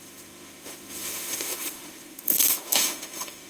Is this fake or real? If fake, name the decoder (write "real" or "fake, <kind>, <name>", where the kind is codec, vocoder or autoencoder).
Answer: fake, autoencoder, DAC-VAE